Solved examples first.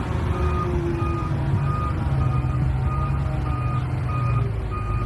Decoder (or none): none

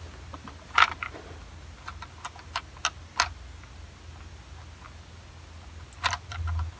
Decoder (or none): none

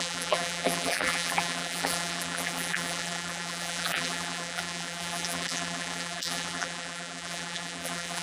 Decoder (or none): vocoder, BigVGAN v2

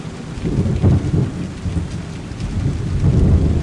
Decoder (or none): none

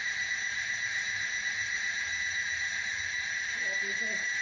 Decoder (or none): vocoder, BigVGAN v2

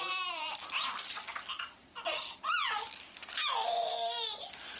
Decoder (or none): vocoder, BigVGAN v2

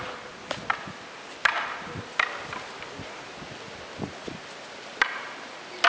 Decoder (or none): none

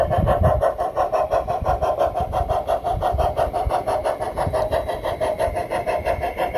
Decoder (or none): none